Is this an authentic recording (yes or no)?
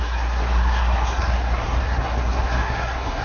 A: no